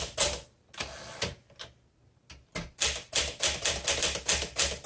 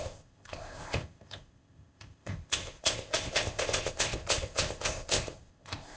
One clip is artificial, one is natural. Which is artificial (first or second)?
second